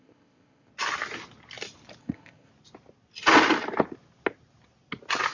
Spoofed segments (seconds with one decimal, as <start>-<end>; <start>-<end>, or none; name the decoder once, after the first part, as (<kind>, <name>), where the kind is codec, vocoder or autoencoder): 0.0-0.7 (codec, ZipCodec); 2.0-2.5